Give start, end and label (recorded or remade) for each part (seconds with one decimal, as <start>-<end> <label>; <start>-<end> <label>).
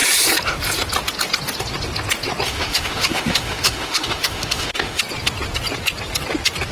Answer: 0.0-2.5 recorded; 2.5-5.0 remade; 5.0-6.7 recorded